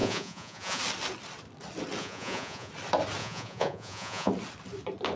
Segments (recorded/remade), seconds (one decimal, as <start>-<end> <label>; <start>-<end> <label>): 0.0-0.8 remade; 0.8-2.0 recorded; 2.0-2.7 remade; 2.7-3.2 recorded; 3.2-4.3 remade; 4.3-5.2 recorded